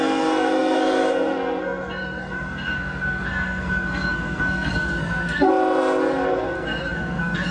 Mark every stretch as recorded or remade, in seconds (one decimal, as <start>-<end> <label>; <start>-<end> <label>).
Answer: 0.0-5.5 remade; 5.5-6.3 recorded; 6.3-7.5 remade